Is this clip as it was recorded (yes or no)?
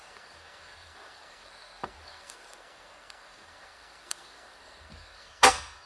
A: no